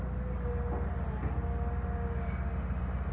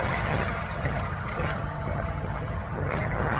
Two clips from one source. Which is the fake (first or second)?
second